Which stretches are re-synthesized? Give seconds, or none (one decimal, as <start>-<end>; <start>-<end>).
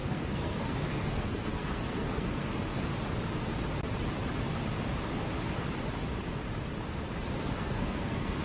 0.0-2.9; 7.3-8.4